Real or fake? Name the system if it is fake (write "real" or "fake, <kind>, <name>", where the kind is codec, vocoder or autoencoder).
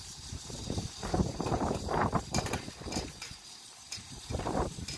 fake, vocoder, BigVGAN v2